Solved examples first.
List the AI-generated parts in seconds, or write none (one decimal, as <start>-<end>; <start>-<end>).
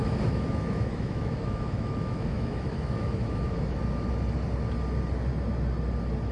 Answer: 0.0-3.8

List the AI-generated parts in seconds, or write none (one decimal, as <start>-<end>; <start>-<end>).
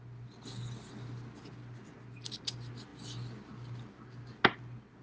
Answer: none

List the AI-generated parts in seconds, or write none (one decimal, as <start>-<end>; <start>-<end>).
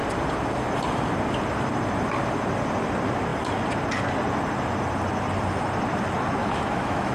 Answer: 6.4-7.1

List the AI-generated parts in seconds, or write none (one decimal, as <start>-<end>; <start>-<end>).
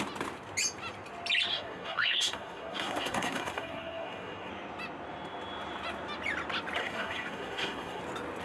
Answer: 1.5-4.5; 6.8-8.0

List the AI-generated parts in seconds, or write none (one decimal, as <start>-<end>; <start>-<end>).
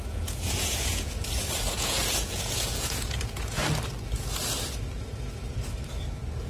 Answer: 0.0-3.6